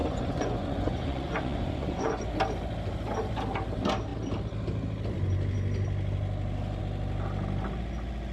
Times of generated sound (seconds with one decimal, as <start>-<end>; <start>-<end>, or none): 0.0-2.3